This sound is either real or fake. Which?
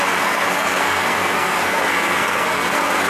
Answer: fake